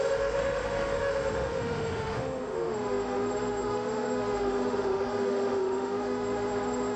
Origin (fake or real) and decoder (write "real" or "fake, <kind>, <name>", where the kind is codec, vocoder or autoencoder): fake, autoencoder, DAC-VAE